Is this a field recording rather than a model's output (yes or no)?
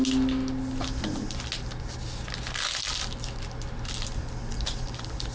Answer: yes